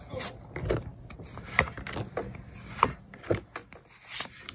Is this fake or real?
real